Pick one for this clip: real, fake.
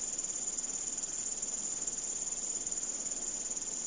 real